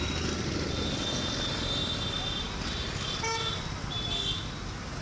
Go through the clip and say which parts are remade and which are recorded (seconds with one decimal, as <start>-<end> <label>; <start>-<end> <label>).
0.0-5.0 recorded